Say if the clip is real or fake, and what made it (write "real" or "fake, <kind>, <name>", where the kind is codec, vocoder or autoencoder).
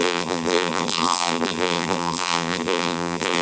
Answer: fake, vocoder, BigVGAN v2